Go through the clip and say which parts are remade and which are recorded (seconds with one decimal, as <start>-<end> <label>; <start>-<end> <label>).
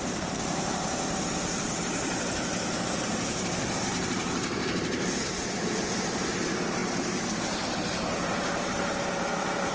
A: 0.0-9.7 remade